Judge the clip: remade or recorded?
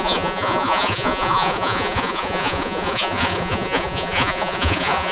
remade